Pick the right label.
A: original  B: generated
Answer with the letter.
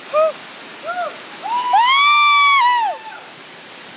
A